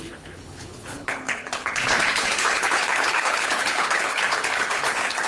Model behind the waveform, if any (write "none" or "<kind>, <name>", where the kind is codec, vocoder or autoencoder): codec, HILCodec